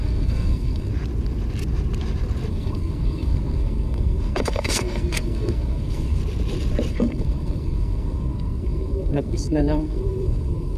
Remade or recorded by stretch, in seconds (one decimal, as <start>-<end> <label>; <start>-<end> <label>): 0.0-0.9 remade; 0.9-2.5 recorded; 2.5-6.2 remade; 6.2-6.9 recorded; 6.9-10.8 remade